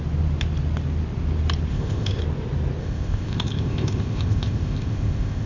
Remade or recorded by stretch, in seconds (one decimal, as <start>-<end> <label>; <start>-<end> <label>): 0.0-1.7 recorded; 1.7-2.2 remade; 2.2-2.8 recorded; 2.8-5.5 remade